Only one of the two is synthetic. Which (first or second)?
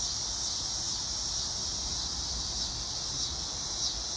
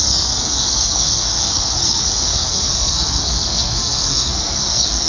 second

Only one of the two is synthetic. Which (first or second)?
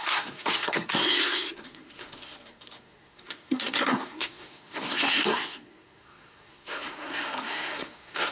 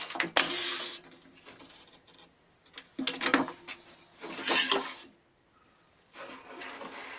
first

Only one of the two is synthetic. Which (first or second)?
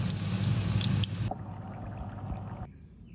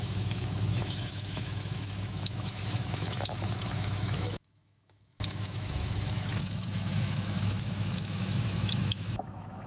second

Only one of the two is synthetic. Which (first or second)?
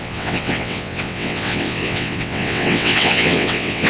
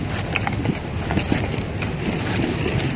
first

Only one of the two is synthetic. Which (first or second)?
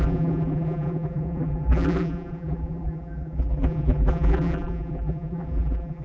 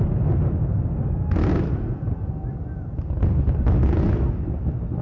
first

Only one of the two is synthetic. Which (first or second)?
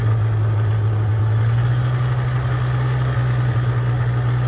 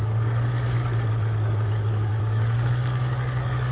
second